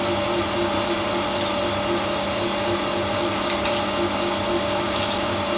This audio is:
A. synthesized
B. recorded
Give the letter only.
B